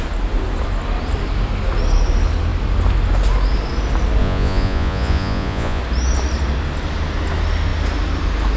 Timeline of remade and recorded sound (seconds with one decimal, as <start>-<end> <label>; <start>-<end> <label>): 0.0-4.2 recorded; 4.2-5.8 remade; 5.8-8.6 recorded